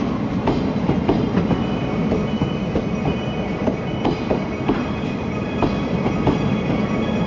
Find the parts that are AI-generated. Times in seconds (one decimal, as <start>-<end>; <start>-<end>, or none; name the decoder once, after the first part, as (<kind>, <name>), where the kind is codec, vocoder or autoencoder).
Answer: 2.6-6.7 (vocoder, BigVGAN v2)